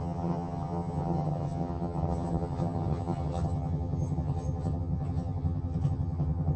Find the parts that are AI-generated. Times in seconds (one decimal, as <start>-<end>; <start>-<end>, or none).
0.0-6.6